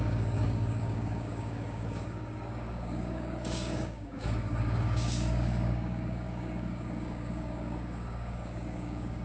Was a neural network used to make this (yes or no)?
yes